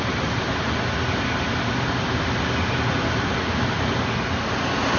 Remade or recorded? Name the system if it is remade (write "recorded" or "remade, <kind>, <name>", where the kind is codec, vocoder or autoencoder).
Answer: recorded